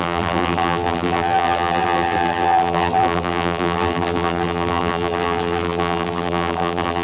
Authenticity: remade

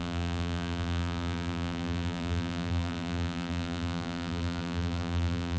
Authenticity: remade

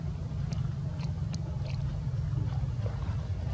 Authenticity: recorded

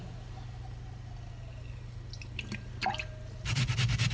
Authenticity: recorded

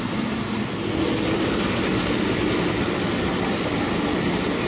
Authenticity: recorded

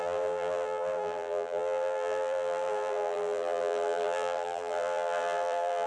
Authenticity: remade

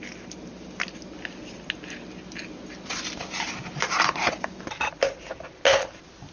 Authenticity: recorded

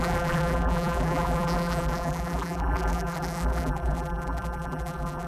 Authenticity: remade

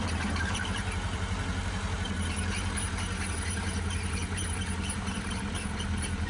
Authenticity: remade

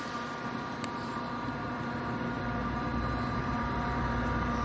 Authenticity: remade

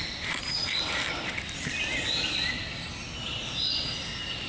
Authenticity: recorded